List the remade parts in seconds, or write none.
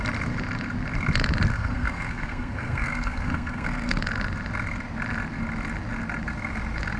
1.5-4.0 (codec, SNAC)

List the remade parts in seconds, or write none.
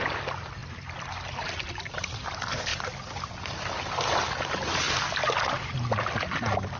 none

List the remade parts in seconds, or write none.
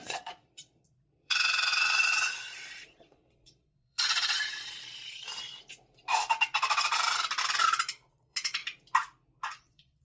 0.0-4.9 (vocoder, Vocos); 8.1-8.6; 9.5-10.0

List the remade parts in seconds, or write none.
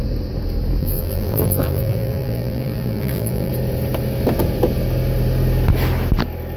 0.8-3.5 (vocoder, BigVGAN v2)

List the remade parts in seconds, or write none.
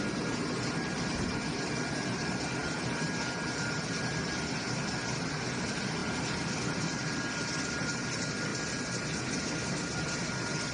none